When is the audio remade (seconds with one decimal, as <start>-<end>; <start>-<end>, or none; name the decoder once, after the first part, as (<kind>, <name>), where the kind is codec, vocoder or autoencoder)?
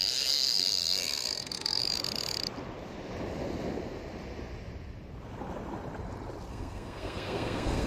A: 0.0-1.8 (codec, SNAC); 6.5-7.9